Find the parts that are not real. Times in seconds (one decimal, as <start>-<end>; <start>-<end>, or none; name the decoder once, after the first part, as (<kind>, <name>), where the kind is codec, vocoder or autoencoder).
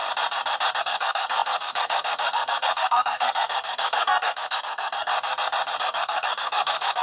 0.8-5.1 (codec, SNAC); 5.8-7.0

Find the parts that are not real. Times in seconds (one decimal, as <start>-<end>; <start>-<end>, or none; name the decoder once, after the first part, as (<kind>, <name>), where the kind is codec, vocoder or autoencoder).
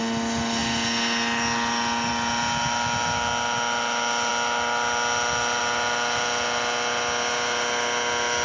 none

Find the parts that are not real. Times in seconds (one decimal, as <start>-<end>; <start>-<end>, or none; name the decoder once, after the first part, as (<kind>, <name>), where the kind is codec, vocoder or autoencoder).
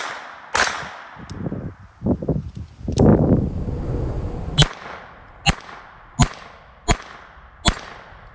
none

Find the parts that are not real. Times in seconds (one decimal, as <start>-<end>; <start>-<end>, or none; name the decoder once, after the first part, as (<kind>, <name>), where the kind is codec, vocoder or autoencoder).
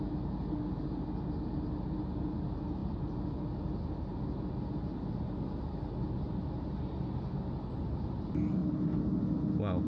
none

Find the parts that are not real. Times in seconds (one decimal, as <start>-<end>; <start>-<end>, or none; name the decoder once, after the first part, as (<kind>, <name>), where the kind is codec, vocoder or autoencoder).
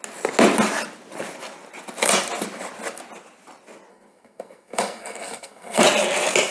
3.9-5.8 (codec, SNAC)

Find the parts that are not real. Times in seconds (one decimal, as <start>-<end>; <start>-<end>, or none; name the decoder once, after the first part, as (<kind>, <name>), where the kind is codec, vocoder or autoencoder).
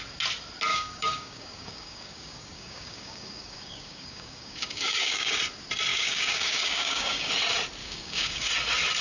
0.7-5.4 (codec, DAC); 5.9-7.3; 7.8-8.5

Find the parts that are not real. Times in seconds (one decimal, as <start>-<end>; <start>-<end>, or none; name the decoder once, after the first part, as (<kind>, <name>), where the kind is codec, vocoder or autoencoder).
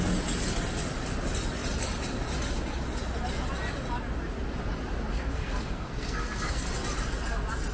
5.1-6.6 (codec, SNAC)